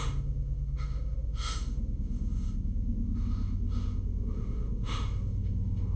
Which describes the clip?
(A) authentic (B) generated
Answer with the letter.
B